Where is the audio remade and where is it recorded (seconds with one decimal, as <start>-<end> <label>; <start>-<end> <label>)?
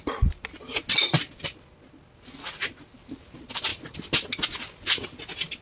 0.0-5.6 recorded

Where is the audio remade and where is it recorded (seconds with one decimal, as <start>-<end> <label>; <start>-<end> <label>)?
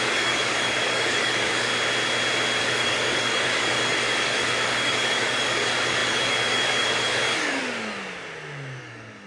0.0-1.7 remade; 1.7-2.6 recorded; 2.6-7.6 remade; 7.6-8.8 recorded; 8.8-9.3 remade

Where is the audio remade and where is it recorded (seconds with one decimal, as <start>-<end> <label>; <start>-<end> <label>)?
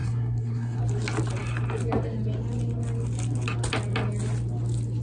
0.0-0.8 remade; 0.8-5.0 recorded